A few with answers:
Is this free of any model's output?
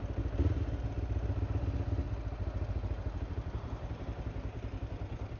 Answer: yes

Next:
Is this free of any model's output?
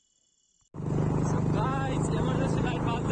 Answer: yes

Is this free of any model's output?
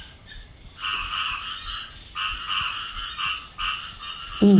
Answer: yes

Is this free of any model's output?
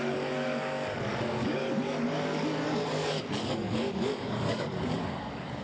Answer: no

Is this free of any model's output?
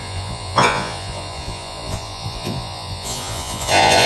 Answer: no